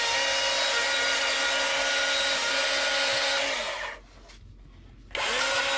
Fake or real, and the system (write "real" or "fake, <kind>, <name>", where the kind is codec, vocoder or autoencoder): real